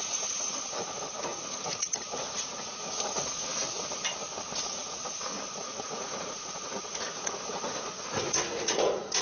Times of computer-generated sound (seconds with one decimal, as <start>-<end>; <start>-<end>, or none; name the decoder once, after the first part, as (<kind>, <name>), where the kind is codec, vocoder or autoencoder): 0.0-3.5 (vocoder, Vocos); 4.6-9.2